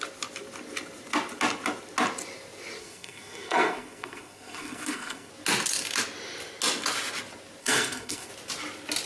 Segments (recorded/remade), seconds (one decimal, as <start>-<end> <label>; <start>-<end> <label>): 0.0-2.8 recorded; 2.8-5.3 remade; 5.3-7.6 recorded; 7.6-8.3 remade; 8.3-9.1 recorded